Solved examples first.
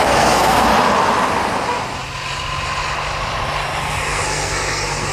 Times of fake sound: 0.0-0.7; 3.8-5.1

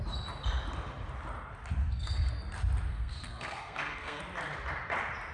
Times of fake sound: 1.8-2.3; 2.9-4.2

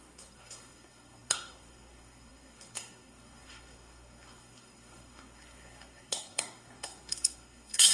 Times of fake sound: 0.0-7.9

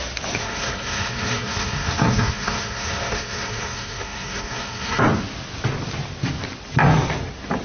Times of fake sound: 0.4-5.0

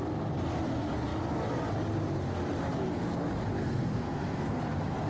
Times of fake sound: 3.6-4.6

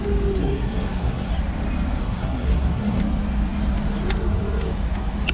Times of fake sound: 0.4-1.3; 2.0-3.0

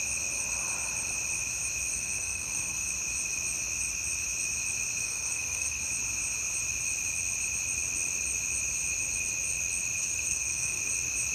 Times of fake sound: 1.9-2.9; 5.0-5.8; 10.0-10.8

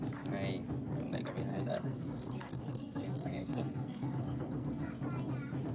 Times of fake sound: 1.5-4.9